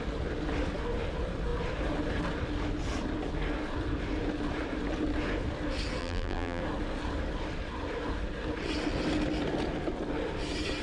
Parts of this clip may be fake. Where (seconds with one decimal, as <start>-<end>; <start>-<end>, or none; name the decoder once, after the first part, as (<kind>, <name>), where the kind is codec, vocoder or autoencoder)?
6.0-6.6 (vocoder, BigVGAN v2)